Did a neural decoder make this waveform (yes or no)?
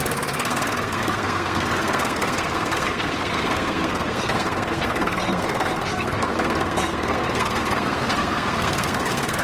yes